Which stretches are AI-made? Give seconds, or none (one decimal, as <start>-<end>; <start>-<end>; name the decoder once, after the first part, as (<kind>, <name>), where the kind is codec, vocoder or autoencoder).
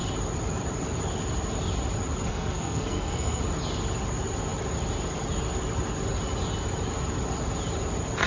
2.3-3.4 (codec, SNAC)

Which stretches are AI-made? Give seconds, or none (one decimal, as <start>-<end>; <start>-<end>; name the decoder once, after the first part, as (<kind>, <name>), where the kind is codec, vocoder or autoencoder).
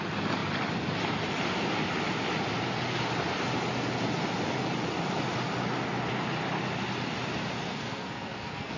7.7-8.8 (codec, SNAC)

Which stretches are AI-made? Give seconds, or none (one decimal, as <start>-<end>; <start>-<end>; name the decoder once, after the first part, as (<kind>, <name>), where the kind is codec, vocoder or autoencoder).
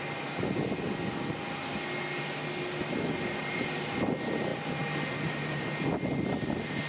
none